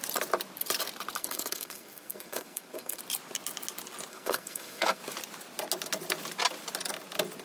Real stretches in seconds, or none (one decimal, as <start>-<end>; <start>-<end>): 0.0-1.2; 3.0-4.1; 5.0-7.4